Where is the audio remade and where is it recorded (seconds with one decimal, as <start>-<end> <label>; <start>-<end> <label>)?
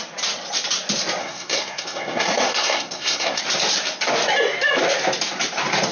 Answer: 0.0-1.2 recorded; 1.2-3.4 remade; 3.4-5.9 recorded